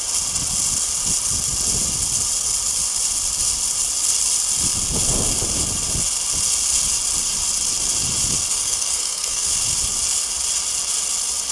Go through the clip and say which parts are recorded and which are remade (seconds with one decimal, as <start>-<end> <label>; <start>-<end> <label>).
0.0-8.5 recorded; 8.5-9.5 remade; 9.5-11.5 recorded